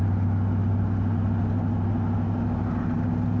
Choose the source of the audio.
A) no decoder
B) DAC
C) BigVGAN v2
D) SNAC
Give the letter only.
A